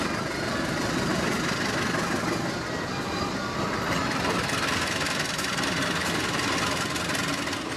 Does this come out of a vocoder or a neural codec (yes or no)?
no